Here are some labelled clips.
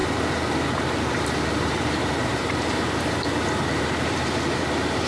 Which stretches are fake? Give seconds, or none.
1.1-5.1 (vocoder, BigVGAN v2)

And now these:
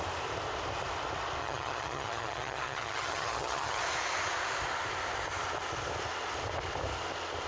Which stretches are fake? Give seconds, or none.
1.4-3.8 (vocoder, HiFi-GAN)

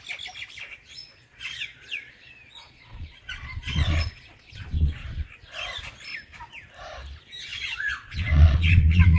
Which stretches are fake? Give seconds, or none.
0.7-5.3 (vocoder, Vocos); 7.5-9.2

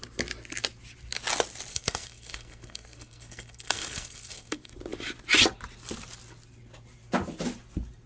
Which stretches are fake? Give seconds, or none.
1.7-4.7 (codec, SNAC)

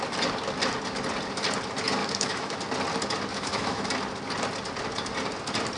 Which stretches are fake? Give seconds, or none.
2.0-2.5 (autoencoder, DAC-VAE); 3.3-3.9